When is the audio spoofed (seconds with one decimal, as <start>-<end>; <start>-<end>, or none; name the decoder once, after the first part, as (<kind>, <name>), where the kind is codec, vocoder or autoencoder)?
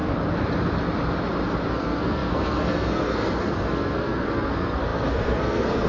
1.7-5.9 (codec, SNAC)